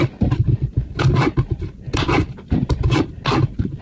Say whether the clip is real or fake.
real